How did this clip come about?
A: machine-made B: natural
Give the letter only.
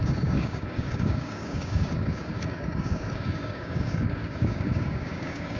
A